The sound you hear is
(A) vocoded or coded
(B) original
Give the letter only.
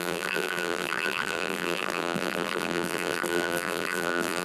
A